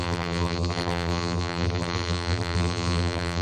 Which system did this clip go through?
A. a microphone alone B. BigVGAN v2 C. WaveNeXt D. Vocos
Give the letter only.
B